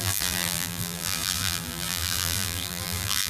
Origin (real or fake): fake